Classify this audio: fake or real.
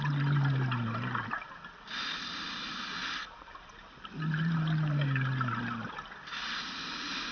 real